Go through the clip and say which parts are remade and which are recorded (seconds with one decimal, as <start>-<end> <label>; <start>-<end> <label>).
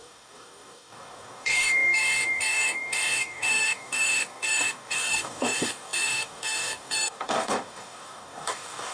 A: 0.0-8.9 remade